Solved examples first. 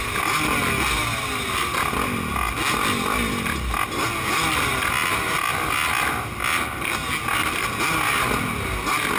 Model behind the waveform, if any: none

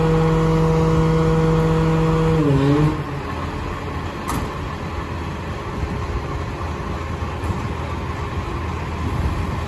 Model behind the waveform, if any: none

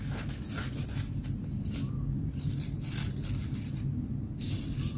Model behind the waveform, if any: none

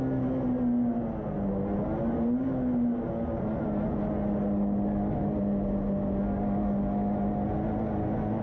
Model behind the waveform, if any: none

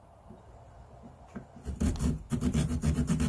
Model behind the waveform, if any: none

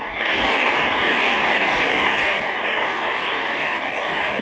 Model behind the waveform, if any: codec, DAC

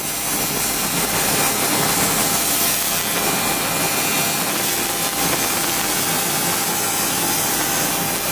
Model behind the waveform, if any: none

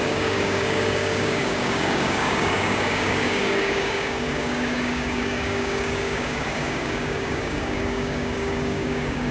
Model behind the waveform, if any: codec, DAC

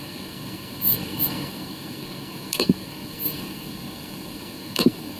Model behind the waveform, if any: codec, SNAC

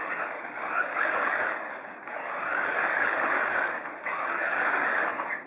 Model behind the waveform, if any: codec, DAC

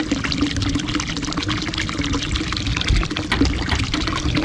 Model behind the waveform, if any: none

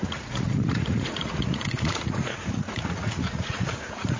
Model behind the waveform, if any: vocoder, Vocos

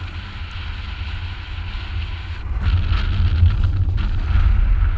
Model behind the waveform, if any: none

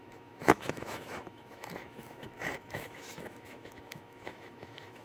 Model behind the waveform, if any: autoencoder, DAC-VAE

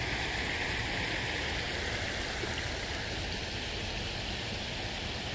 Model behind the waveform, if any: none